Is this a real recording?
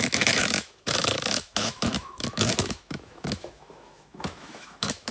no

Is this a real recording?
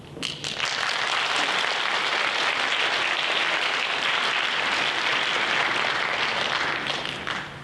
yes